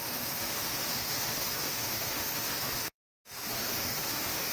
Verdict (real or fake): fake